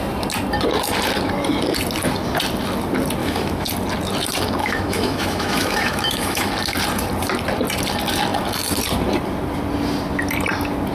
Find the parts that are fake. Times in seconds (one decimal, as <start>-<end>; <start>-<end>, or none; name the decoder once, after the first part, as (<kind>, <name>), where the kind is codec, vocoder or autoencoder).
3.2-3.7 (autoencoder, DAC-VAE); 4.6-6.5